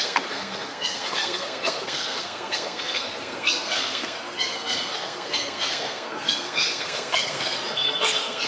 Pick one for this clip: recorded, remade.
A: remade